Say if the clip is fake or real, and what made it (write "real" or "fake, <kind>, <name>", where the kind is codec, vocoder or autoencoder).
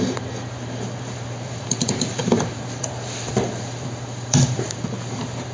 fake, vocoder, BigVGAN v2